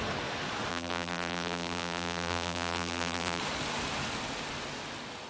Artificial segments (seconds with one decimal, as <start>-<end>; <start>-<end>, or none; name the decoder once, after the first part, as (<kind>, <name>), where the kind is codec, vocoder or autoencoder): 0.7-3.4 (vocoder, BigVGAN v2)